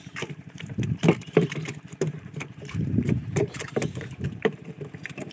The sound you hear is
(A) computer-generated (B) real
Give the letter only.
A